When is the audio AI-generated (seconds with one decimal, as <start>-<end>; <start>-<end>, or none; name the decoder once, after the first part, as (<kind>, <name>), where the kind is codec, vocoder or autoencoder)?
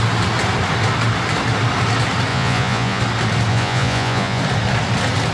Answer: 2.3-3.0 (vocoder, Vocos); 3.5-4.4